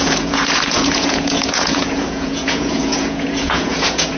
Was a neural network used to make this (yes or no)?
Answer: yes